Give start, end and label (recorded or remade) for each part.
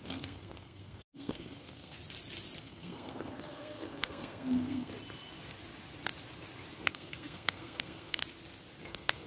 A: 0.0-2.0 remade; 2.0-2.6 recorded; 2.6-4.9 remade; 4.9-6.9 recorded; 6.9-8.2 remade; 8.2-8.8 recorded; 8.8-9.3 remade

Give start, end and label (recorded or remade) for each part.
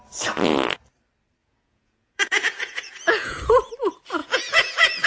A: 0.0-1.4 recorded; 1.4-3.4 remade; 3.4-4.2 recorded; 4.2-5.1 remade